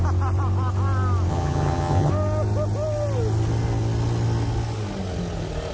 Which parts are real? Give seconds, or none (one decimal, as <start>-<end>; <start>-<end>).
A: 0.0-1.3; 2.1-5.7